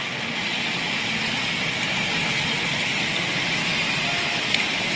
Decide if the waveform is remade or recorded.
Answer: recorded